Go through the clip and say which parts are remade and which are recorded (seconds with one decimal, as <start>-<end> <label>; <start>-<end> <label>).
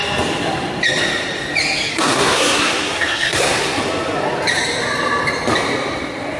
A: 0.0-1.9 recorded; 1.9-3.8 remade; 3.8-6.4 recorded